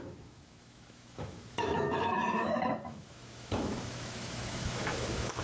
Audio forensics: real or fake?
fake